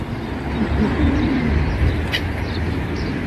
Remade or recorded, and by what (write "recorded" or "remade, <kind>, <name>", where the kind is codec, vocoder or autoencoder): recorded